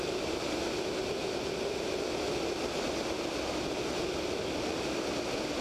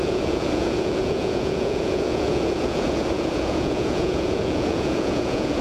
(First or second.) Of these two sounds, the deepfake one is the second